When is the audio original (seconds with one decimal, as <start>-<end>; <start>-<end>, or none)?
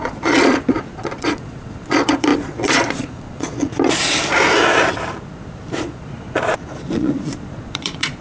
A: 3.7-5.8